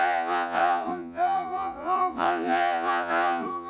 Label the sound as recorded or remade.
remade